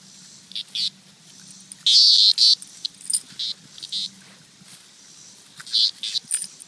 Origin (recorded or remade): recorded